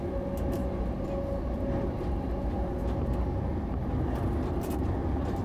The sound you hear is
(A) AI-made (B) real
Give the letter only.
B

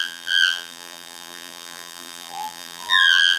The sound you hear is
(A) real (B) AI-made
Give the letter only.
B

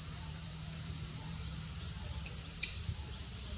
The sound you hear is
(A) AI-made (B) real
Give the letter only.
A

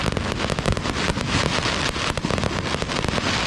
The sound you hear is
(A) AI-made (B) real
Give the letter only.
B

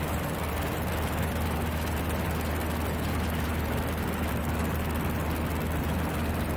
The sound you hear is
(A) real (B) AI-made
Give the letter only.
A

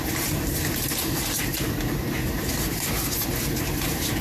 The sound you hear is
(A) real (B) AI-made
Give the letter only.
B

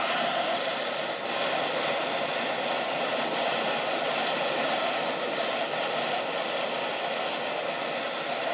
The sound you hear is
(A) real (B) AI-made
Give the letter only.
A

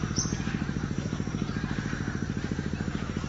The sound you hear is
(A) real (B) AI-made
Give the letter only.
B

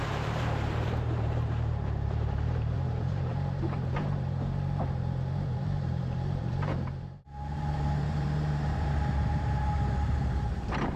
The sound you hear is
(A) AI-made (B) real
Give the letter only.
A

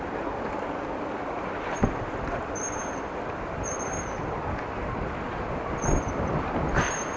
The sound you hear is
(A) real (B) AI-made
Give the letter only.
B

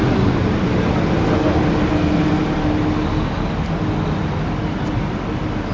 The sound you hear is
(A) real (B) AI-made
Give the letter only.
A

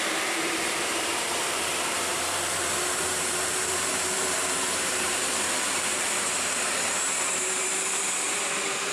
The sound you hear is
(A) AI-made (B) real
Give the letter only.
A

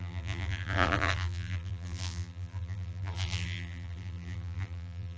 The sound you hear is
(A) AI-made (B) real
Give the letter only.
A